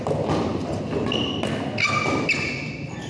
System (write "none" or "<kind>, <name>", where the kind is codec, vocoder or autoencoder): none